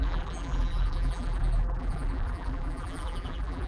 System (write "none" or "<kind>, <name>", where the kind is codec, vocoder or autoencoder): vocoder, BigVGAN v2